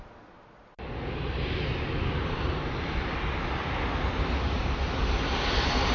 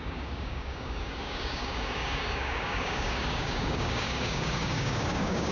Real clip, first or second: first